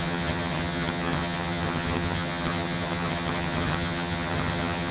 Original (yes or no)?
no